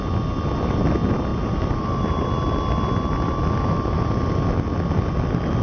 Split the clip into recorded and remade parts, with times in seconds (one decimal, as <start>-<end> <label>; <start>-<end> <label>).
0.0-1.3 recorded; 1.3-2.3 remade; 2.3-5.6 recorded